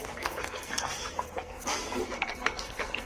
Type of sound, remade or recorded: remade